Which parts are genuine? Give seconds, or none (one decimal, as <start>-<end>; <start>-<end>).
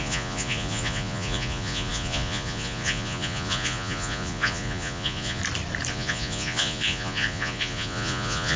5.4-5.9